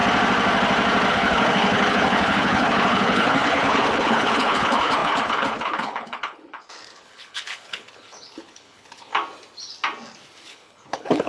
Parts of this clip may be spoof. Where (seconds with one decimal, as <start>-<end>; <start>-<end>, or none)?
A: 1.1-9.1; 10.4-11.3

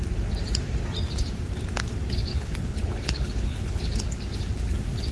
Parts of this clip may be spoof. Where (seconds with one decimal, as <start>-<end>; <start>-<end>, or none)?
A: 2.3-4.0

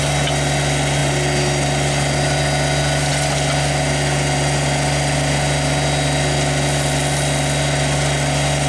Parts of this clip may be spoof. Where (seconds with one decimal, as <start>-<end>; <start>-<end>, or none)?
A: none

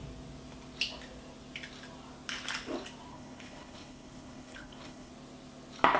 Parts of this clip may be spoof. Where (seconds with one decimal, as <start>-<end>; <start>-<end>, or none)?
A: 3.1-5.1